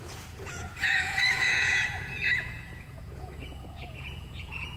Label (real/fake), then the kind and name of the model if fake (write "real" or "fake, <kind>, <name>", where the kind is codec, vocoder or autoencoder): fake, vocoder, Vocos